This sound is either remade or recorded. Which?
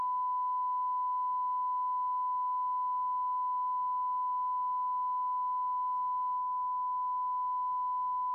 recorded